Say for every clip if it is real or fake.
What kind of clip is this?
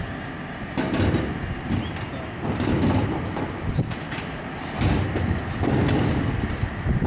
real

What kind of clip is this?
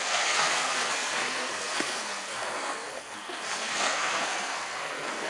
fake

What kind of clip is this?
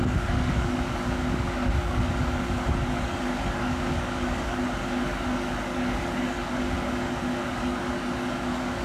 fake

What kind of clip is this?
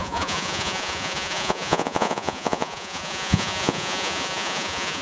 fake